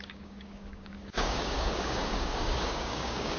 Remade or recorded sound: remade